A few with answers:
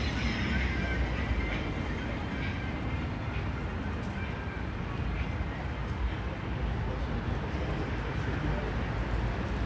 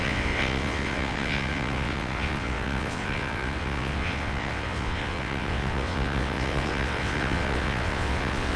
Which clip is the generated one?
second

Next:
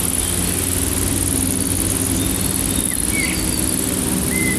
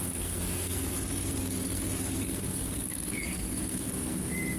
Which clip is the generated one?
second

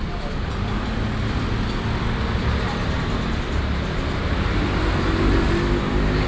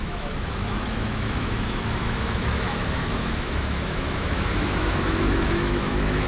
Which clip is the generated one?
second